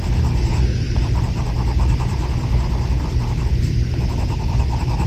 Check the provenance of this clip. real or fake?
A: real